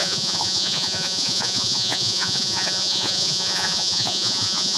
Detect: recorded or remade remade